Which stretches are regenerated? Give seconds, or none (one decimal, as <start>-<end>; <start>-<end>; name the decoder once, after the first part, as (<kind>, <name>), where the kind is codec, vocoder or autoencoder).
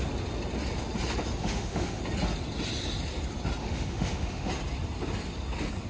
1.4-2.0 (autoencoder, DAC-VAE); 3.6-4.5